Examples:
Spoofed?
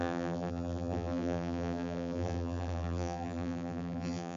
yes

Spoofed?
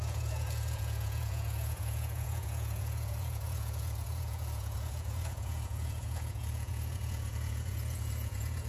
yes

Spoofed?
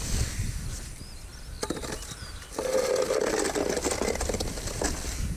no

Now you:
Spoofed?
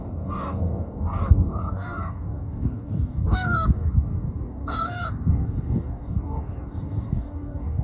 yes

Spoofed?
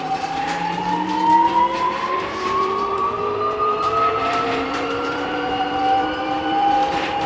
yes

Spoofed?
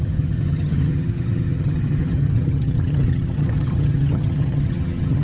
yes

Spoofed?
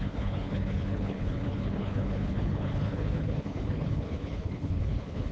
yes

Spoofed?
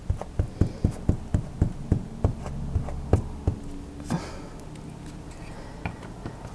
no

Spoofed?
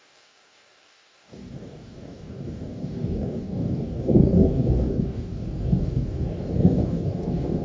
yes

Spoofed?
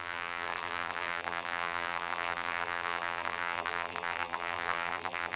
yes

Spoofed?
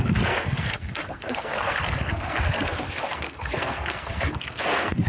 yes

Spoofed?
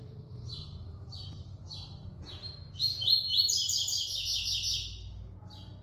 no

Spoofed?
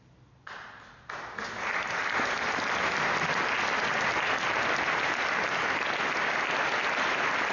no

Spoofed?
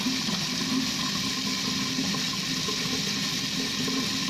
no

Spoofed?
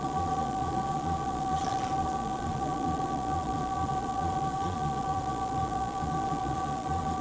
yes